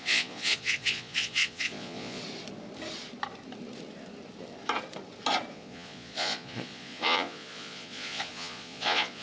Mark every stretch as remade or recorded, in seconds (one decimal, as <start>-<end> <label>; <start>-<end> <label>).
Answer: 0.0-2.2 remade; 2.2-5.5 recorded; 5.5-9.2 remade